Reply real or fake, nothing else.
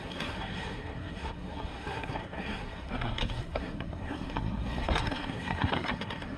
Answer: fake